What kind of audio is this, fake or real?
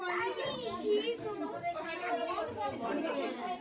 fake